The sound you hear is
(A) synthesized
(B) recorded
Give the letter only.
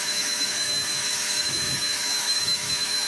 A